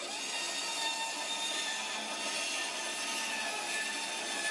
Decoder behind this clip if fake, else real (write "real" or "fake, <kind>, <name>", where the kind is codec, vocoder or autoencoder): real